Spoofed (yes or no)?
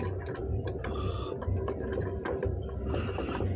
yes